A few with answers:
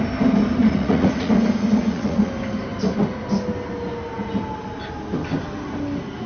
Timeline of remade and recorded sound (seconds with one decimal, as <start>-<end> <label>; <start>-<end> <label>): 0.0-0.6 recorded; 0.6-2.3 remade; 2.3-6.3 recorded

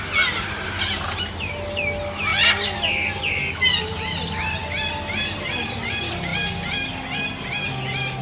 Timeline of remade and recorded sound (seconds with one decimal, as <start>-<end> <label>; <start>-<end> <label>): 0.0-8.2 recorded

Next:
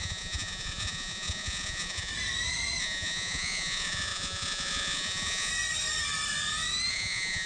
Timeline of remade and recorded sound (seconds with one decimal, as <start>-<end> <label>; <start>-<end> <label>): 0.0-2.1 remade; 2.1-2.8 recorded; 2.8-5.5 remade; 5.5-6.9 recorded; 6.9-7.5 remade

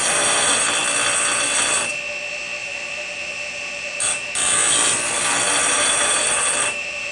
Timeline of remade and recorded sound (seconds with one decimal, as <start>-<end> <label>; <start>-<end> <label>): 0.0-2.6 recorded; 2.6-4.3 remade; 4.3-5.6 recorded; 5.6-7.1 remade